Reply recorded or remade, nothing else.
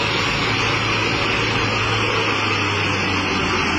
recorded